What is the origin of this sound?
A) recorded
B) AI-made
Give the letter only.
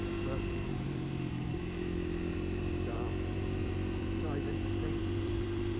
B